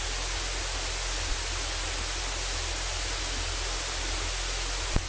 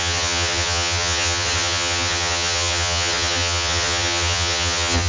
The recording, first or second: first